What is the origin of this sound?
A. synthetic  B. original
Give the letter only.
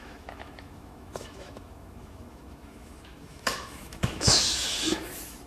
A